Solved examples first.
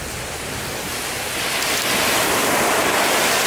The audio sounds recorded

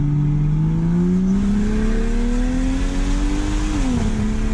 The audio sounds recorded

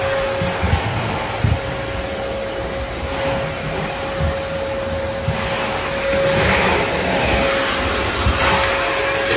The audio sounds recorded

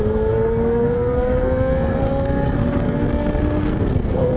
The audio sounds remade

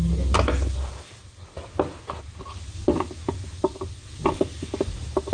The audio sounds recorded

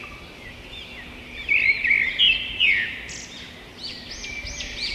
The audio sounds recorded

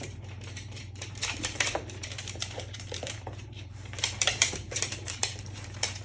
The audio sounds remade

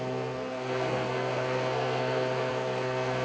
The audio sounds remade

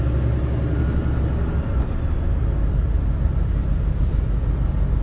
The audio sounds recorded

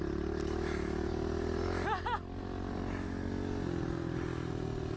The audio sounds recorded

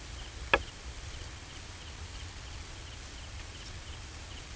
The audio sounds recorded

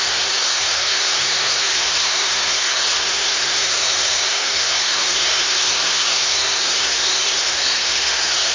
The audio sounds remade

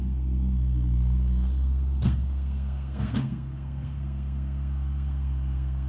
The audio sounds remade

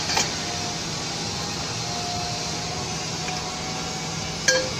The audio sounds recorded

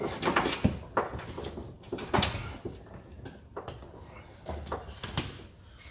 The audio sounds recorded